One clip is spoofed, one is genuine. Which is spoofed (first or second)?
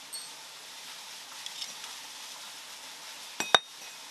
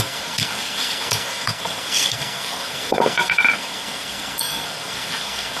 second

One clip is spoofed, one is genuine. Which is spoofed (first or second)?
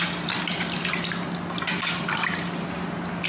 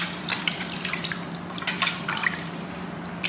second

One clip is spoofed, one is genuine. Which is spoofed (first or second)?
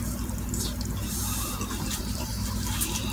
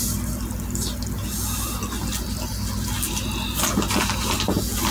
first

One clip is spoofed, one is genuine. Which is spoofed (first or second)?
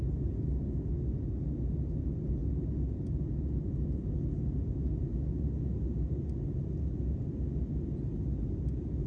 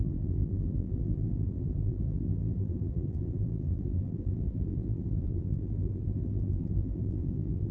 second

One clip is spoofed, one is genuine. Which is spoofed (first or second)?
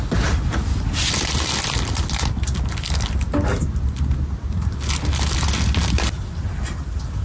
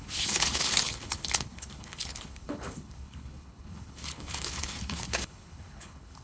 second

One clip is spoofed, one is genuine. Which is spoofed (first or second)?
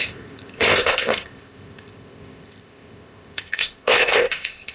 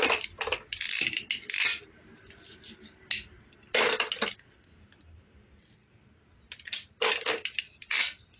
first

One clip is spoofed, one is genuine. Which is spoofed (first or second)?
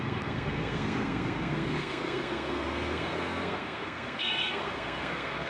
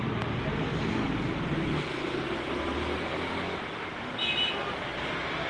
first